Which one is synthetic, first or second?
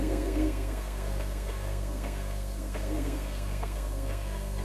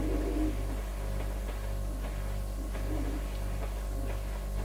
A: first